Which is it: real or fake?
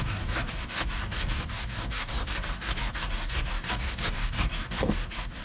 fake